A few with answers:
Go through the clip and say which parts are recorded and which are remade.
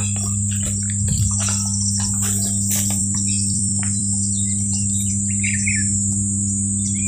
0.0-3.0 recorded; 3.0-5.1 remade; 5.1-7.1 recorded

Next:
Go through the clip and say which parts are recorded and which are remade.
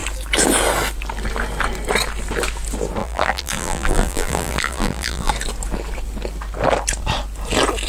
0.0-3.0 recorded; 3.0-5.3 remade; 5.3-7.9 recorded